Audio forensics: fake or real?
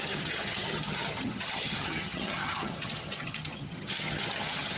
fake